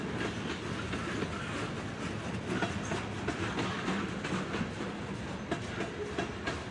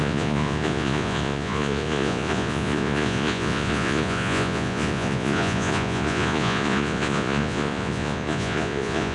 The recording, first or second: first